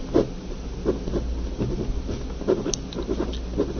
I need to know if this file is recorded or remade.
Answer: recorded